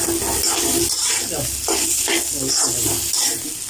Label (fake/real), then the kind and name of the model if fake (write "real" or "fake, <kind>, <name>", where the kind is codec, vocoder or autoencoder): real